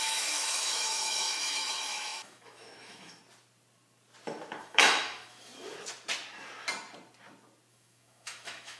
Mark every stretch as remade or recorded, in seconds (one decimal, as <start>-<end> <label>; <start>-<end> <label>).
0.0-3.2 remade; 3.2-4.6 recorded; 4.6-5.5 remade; 5.5-7.7 recorded; 7.7-8.8 remade